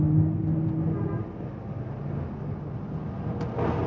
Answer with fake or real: real